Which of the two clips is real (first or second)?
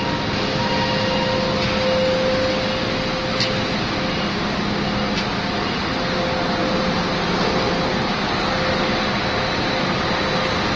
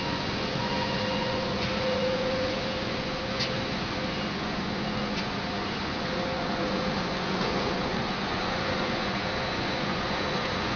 first